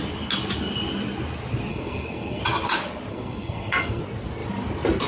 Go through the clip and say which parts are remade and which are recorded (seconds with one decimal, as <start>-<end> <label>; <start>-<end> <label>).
0.0-1.7 recorded; 1.7-2.4 remade; 2.4-3.1 recorded; 3.1-4.0 remade; 4.0-5.1 recorded